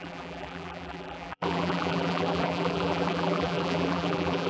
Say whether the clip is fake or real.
fake